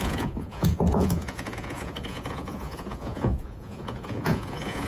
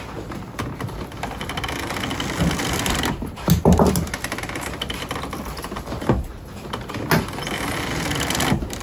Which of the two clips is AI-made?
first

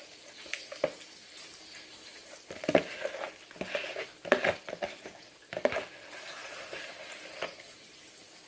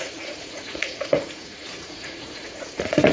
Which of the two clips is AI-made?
second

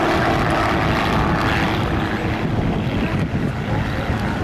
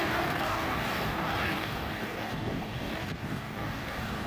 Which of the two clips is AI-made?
second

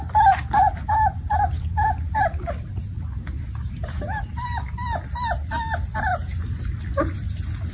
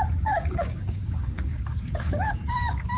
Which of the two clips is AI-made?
second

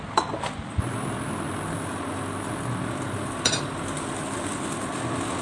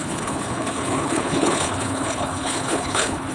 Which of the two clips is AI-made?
second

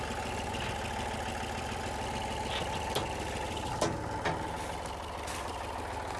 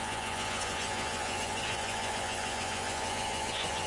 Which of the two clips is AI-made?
second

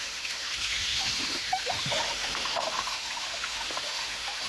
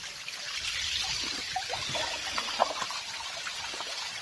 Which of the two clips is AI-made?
first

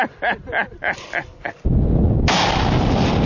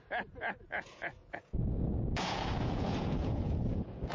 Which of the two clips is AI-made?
second